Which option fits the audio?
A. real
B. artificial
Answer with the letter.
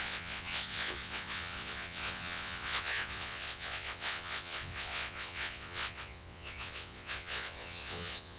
B